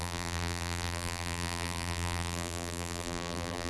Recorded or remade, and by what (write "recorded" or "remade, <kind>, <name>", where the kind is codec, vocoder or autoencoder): remade, vocoder, BigVGAN v2